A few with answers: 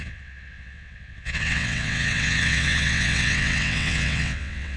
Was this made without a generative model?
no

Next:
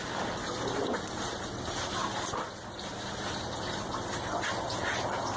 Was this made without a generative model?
yes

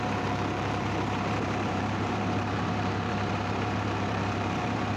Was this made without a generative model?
no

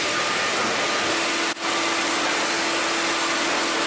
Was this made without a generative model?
yes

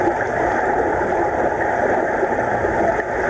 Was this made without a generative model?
yes